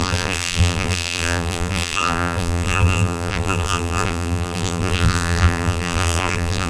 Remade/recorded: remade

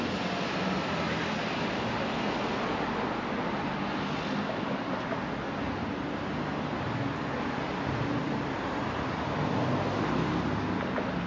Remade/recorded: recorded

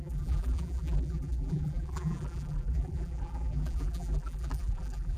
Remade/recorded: remade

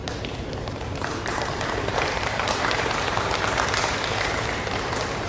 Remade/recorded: remade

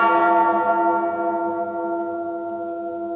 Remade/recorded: recorded